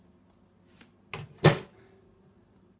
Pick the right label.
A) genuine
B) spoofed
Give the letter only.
A